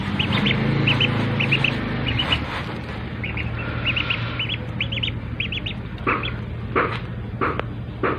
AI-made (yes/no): no